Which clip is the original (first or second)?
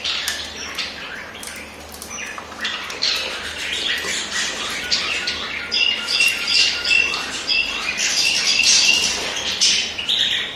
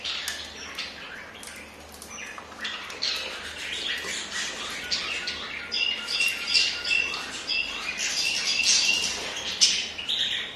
second